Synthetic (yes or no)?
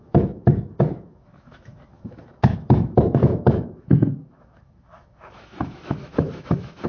yes